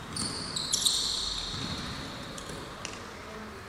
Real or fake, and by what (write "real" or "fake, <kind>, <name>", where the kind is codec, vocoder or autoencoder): real